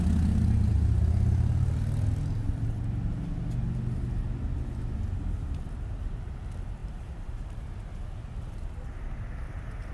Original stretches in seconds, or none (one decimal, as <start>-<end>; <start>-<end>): 0.0-6.8; 7.7-9.9